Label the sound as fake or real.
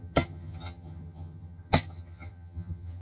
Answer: fake